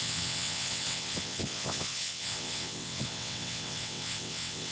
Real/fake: fake